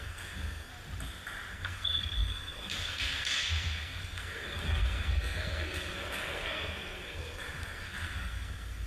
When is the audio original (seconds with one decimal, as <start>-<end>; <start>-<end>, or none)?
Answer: 0.7-1.5